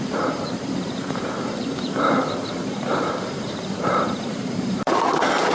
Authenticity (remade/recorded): remade